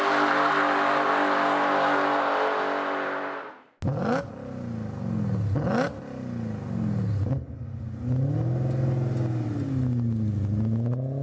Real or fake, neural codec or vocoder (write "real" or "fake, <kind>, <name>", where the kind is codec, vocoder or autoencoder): real